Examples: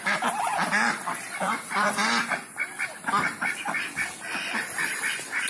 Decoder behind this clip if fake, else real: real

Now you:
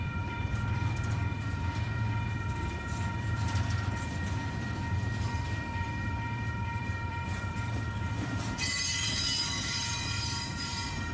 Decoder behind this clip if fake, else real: fake, vocoder, BigVGAN v2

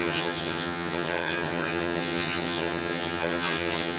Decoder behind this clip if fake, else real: fake, vocoder, HiFi-GAN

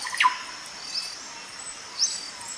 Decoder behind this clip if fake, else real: real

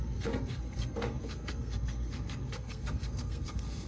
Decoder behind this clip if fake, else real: fake, codec, SNAC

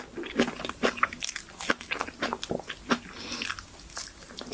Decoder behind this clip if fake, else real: real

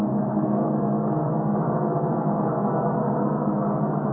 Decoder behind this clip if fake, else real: fake, codec, SNAC